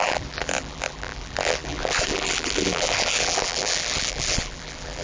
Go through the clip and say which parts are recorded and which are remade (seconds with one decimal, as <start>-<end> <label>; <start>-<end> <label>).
0.0-5.0 remade